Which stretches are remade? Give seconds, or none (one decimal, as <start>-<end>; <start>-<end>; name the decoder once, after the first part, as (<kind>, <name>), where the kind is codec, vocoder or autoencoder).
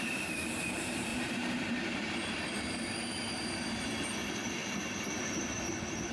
0.0-6.1 (vocoder, BigVGAN v2)